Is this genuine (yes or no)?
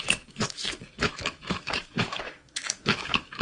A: no